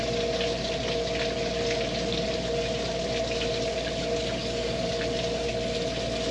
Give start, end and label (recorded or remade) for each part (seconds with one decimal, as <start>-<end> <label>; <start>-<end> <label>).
0.0-4.4 recorded; 4.4-4.9 remade; 4.9-6.3 recorded